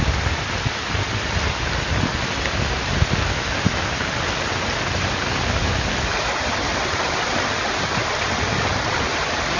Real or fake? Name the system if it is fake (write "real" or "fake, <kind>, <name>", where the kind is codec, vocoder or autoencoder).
real